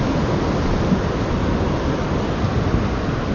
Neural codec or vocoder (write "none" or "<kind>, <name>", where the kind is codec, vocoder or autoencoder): none